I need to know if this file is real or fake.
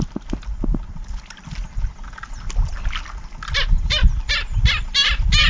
real